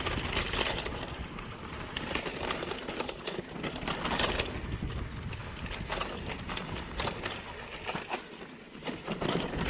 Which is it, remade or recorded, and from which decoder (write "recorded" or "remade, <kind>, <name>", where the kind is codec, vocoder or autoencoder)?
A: recorded